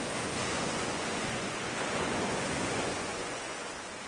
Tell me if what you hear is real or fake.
fake